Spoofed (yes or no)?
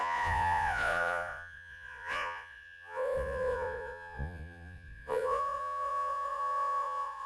yes